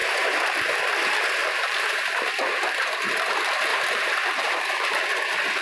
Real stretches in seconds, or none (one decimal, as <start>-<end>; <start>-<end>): 0.8-1.4; 2.3-3.7; 4.9-5.6